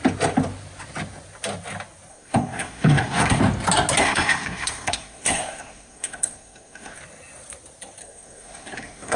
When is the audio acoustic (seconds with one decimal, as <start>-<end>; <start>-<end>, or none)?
0.0-2.1; 3.4-4.0; 7.0-8.0